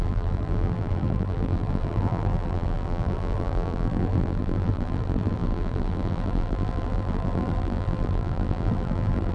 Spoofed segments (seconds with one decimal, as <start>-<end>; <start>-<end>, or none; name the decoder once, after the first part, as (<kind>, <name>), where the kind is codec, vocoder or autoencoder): 0.0-9.3 (vocoder, BigVGAN v2)